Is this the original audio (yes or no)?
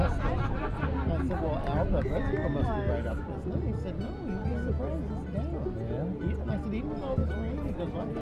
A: yes